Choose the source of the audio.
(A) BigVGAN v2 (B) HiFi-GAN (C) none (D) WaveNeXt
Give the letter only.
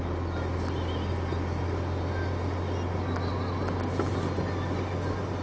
C